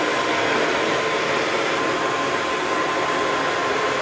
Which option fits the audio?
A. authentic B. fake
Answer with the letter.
A